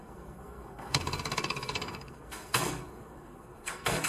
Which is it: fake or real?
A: fake